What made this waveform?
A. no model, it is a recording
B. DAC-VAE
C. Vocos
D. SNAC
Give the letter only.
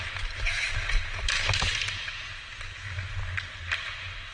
A